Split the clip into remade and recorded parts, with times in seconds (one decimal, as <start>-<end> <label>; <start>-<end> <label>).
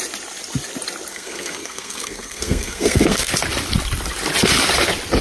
0.0-1.1 recorded; 1.1-3.3 remade; 3.3-5.2 recorded